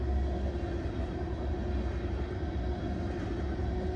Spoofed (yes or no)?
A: no